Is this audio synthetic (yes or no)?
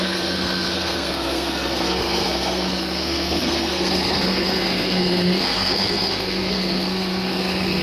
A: yes